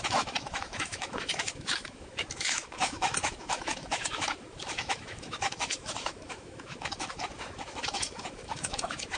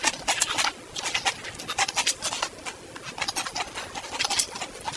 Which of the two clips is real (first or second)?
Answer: second